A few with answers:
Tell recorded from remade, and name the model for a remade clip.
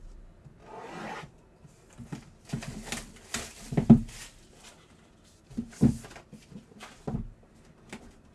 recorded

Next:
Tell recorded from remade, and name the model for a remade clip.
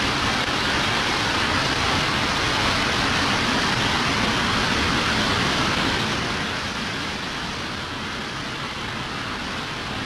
recorded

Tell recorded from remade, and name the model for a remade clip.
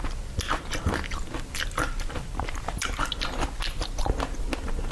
recorded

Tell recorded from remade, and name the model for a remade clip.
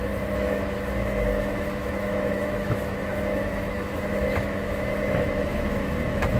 remade, autoencoder, DAC-VAE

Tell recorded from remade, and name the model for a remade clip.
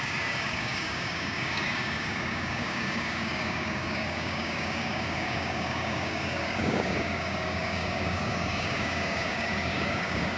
remade, codec, DAC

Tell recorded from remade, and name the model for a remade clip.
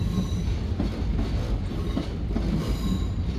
recorded